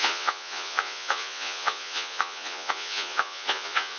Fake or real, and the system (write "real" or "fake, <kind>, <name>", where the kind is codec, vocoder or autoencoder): fake, vocoder, Vocos